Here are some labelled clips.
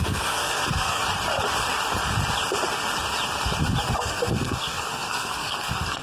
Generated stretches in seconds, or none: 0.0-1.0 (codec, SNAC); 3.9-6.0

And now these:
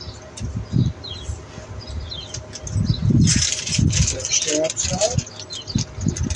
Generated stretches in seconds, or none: none

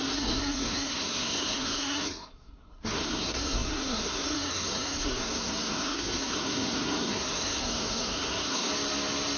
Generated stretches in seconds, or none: 0.0-8.7 (codec, SNAC)